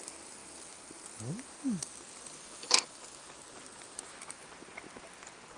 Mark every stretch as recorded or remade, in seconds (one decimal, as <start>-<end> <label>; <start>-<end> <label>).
0.0-5.6 recorded